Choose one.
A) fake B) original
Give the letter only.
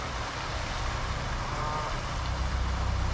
B